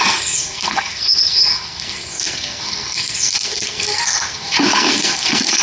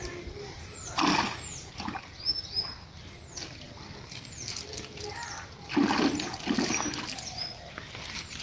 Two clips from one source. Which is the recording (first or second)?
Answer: second